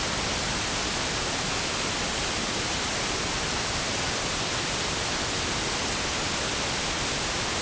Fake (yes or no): no